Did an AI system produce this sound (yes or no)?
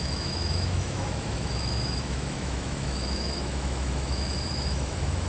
yes